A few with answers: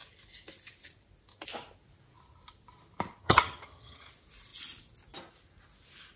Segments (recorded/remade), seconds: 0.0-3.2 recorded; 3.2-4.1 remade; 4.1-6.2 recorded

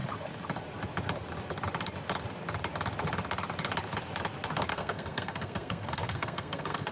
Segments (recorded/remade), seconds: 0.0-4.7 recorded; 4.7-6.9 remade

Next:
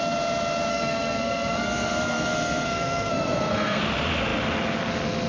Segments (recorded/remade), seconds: 0.0-0.7 recorded; 0.7-3.8 remade; 3.8-5.3 recorded

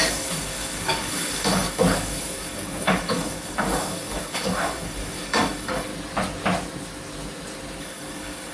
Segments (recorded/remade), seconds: 0.0-5.9 remade; 5.9-7.8 recorded; 7.8-8.5 remade

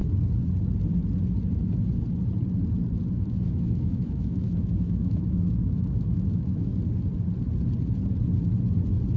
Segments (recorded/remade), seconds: 0.0-3.1 recorded; 3.1-6.7 remade; 6.7-9.2 recorded